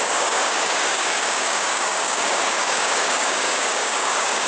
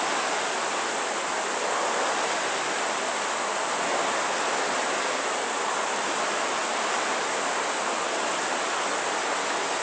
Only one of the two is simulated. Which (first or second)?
first